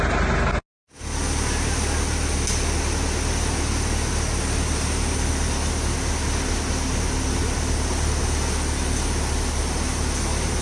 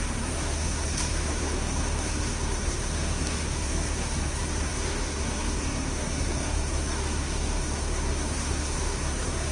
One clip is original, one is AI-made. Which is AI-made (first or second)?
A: second